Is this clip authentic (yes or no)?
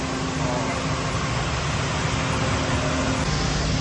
yes